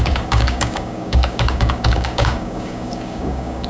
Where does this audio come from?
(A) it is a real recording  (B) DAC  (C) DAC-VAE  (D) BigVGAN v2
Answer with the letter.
B